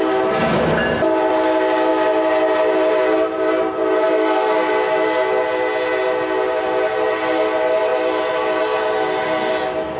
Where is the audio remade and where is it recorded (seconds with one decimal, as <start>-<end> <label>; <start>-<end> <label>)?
0.0-3.8 recorded; 3.8-4.7 remade; 4.7-10.0 recorded